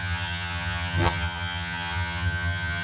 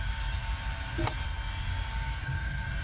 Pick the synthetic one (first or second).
first